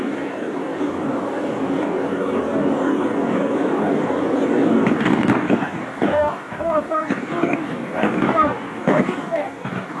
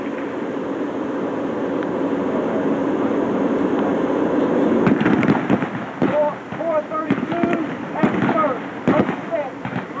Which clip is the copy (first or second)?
first